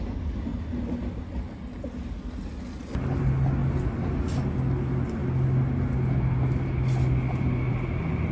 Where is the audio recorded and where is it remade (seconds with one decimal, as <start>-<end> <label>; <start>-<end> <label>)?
0.0-8.3 recorded